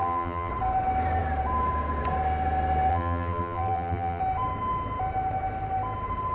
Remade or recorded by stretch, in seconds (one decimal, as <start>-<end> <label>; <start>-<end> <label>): 0.0-0.5 remade; 0.5-2.9 recorded; 2.9-4.2 remade; 4.2-6.3 recorded